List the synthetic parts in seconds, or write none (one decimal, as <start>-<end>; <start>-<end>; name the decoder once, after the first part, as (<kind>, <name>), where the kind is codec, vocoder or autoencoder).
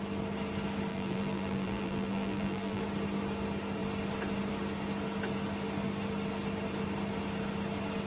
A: 0.9-2.8 (vocoder, BigVGAN v2)